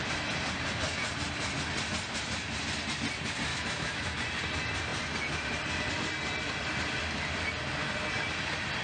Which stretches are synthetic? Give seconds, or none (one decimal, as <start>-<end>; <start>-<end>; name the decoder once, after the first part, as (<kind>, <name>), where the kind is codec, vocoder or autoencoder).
3.5-4.2 (autoencoder, DAC-VAE)